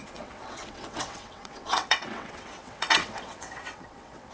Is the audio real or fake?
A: fake